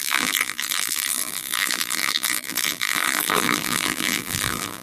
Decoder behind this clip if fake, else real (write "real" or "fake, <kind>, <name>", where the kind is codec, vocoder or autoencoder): fake, vocoder, BigVGAN v2